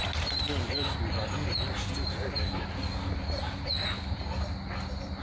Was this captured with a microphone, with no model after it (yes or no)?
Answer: yes